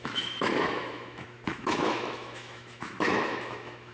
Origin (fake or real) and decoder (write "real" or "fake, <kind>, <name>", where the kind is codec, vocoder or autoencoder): fake, autoencoder, DAC-VAE